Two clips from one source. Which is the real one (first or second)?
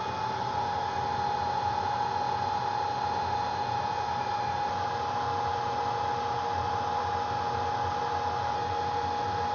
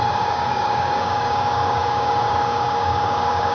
first